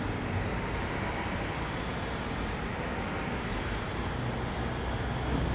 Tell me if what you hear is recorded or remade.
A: recorded